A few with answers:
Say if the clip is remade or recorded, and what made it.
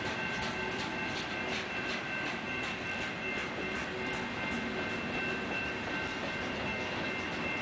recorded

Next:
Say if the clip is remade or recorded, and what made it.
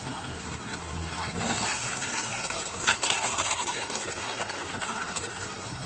remade, codec, SNAC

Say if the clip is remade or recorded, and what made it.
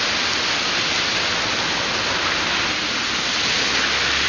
recorded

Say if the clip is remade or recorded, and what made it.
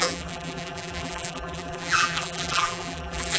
remade, vocoder, BigVGAN v2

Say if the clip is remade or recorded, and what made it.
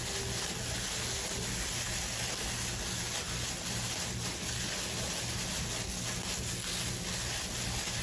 recorded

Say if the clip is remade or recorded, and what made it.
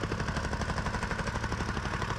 recorded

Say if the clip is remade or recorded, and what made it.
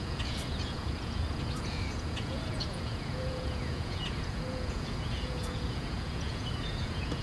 remade, vocoder, Vocos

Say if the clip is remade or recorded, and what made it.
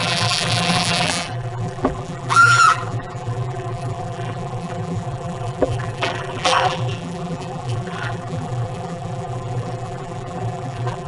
remade, vocoder, BigVGAN v2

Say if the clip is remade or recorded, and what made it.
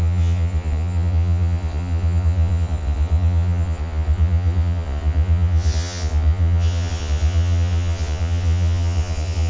remade, vocoder, Vocos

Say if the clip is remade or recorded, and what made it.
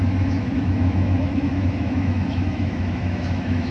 remade, autoencoder, DAC-VAE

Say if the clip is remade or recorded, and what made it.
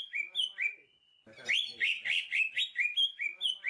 recorded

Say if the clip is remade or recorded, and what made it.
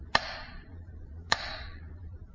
remade, vocoder, Vocos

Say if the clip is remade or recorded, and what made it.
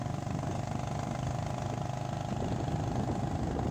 recorded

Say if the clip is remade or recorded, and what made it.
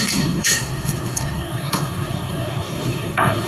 remade, codec, SNAC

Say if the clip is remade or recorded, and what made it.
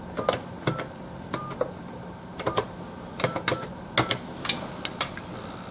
recorded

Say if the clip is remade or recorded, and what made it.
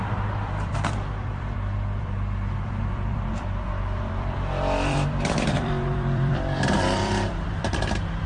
remade, vocoder, BigVGAN v2